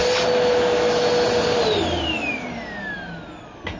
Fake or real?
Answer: real